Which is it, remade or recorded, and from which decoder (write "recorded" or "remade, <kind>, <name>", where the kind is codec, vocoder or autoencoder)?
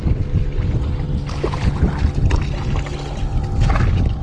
recorded